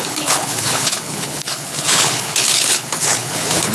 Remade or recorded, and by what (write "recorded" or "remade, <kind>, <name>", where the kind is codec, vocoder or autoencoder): remade, codec, HILCodec